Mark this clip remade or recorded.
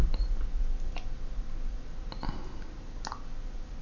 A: recorded